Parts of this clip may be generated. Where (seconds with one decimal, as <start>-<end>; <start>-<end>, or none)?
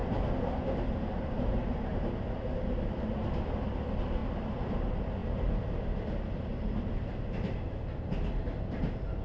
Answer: none